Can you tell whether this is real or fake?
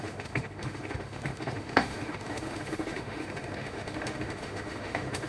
fake